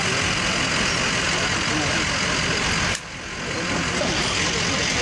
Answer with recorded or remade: recorded